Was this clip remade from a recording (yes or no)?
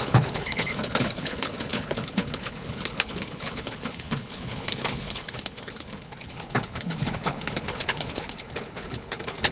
yes